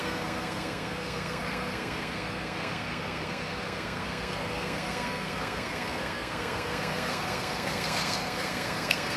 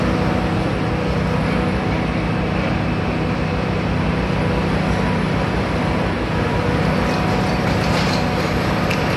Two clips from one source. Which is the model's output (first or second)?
first